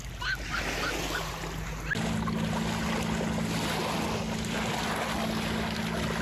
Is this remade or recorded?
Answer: recorded